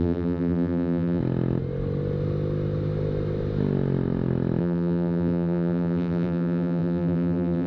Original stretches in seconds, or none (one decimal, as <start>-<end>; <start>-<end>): 1.2-4.6